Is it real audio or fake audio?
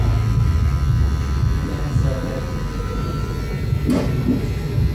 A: real